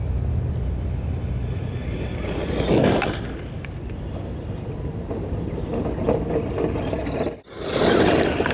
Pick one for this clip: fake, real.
real